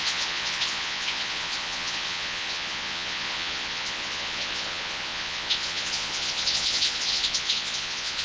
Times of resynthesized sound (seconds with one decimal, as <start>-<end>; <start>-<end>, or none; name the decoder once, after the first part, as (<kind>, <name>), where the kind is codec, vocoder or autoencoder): 0.0-8.2 (vocoder, Vocos)